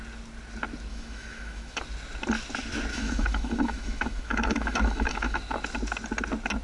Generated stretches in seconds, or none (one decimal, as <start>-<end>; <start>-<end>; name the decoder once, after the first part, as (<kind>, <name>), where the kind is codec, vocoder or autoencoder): 0.9-1.8 (autoencoder, DAC-VAE); 2.9-5.4